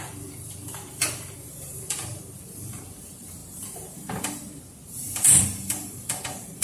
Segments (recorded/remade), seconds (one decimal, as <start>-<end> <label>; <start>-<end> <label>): 0.0-6.6 remade